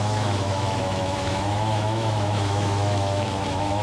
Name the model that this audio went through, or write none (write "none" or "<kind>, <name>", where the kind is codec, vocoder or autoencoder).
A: autoencoder, DAC-VAE